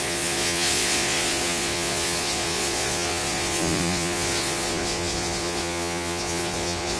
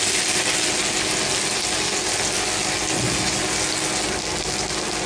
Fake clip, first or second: first